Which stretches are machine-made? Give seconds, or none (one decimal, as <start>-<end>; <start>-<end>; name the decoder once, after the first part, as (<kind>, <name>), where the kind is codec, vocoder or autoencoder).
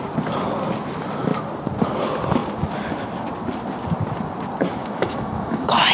4.8-5.9 (autoencoder, DAC-VAE)